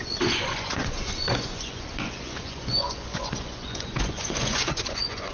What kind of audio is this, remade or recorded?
remade